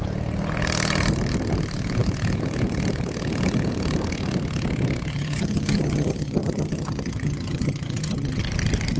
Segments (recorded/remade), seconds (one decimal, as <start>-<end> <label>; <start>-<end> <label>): 0.0-5.1 recorded; 5.1-8.4 remade; 8.4-9.0 recorded